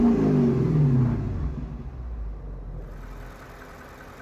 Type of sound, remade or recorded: recorded